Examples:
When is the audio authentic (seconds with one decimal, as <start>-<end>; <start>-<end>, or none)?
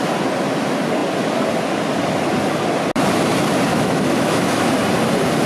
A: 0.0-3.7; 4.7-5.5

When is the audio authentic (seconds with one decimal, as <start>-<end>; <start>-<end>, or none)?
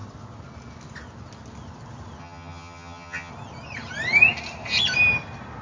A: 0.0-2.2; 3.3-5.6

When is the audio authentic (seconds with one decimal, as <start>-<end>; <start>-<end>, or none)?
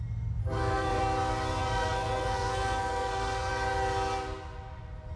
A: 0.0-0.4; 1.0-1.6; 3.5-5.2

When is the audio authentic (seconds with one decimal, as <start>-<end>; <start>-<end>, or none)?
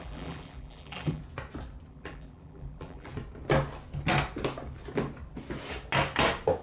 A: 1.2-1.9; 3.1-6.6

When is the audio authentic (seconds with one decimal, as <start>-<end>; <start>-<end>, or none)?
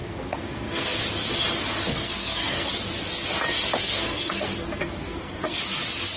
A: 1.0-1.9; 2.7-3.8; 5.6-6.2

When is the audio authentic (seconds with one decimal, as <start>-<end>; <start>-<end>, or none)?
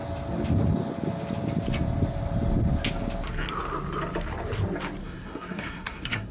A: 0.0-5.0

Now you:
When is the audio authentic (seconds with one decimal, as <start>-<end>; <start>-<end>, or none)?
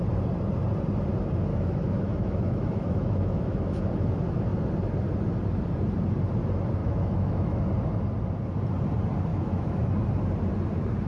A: 0.0-1.5; 3.8-6.8; 7.6-9.3; 9.9-11.1